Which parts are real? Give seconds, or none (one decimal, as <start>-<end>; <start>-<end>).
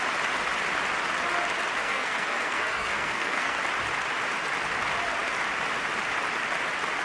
0.0-1.8; 3.6-7.0